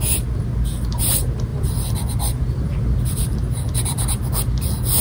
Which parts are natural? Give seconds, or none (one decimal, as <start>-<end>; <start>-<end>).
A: 0.0-1.5; 4.2-5.0